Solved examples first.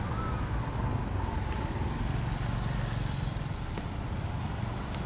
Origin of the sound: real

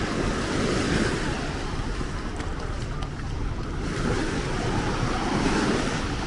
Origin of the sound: fake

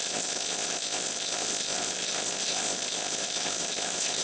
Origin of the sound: fake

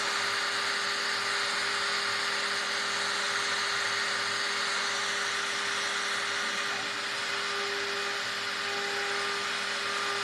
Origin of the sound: real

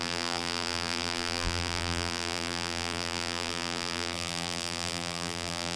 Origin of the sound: fake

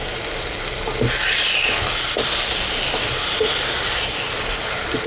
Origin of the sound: real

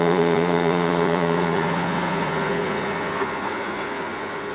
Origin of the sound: fake